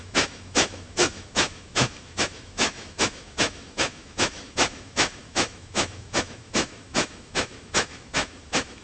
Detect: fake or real fake